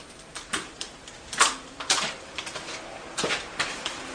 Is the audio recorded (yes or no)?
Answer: no